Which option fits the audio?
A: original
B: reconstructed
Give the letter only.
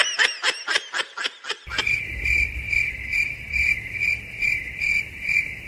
A